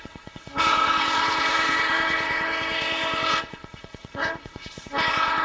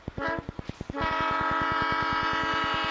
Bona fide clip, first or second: second